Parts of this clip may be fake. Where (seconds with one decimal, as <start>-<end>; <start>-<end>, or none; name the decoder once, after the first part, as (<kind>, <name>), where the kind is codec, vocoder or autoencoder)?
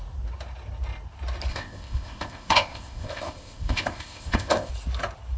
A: 1.5-4.7 (codec, ZipCodec)